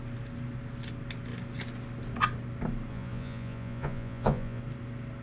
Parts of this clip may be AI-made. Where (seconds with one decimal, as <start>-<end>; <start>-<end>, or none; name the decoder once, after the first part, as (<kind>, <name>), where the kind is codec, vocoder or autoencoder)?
2.9-4.6 (vocoder, Vocos)

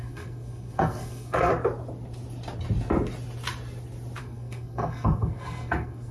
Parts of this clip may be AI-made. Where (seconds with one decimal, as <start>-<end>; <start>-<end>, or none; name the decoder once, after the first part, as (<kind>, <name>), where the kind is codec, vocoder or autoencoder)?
0.0-1.5 (codec, SNAC); 4.2-6.1

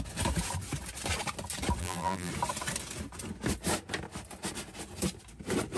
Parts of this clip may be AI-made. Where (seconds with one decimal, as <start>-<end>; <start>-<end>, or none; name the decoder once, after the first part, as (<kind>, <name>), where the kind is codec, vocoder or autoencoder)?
1.8-2.3 (vocoder, BigVGAN v2)

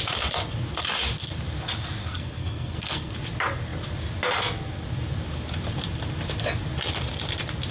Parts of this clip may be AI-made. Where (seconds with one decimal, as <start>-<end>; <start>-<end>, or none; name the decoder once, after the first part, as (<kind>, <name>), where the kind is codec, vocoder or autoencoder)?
2.0-3.1 (codec, SNAC)

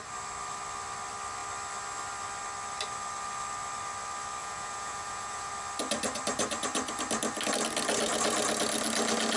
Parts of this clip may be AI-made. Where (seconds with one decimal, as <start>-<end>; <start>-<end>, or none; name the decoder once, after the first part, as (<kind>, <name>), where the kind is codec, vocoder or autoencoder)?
4.4-5.5 (vocoder, Vocos)

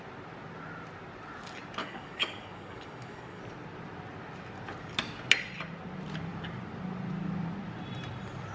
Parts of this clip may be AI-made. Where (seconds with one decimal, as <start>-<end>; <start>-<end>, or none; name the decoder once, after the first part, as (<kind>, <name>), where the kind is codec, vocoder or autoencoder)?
1.8-3.4 (codec, DAC)

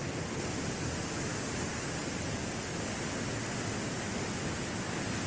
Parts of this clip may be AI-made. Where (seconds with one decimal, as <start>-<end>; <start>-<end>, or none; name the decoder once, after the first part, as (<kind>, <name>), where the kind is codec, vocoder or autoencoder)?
none

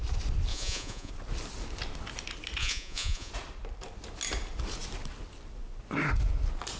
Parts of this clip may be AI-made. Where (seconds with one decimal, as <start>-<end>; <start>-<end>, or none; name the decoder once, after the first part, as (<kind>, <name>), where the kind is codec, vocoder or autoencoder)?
0.5-1.1 (vocoder, Vocos); 2.6-3.3